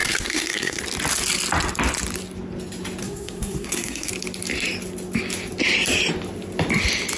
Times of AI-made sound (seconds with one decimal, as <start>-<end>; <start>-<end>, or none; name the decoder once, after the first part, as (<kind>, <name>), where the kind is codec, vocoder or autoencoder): 0.0-0.8 (codec, SNAC); 3.0-4.1